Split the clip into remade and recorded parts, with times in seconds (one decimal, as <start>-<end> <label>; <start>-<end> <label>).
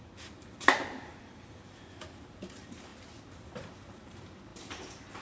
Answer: 0.0-5.2 remade